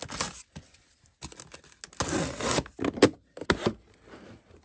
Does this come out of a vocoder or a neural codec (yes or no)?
no